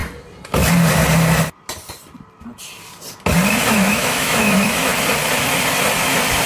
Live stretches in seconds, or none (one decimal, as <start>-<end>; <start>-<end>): 0.0-3.7; 4.9-6.5